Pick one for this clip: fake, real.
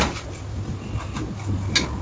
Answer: real